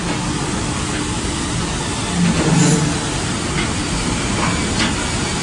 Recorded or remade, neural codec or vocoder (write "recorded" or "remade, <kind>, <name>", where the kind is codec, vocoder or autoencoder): recorded